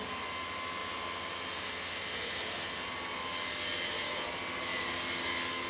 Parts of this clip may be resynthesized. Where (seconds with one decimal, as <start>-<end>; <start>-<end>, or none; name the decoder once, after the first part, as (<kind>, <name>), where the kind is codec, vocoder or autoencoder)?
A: none